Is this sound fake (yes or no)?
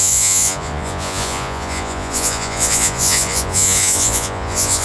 yes